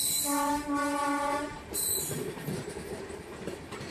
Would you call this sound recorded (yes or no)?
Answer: yes